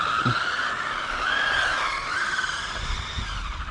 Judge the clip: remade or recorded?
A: recorded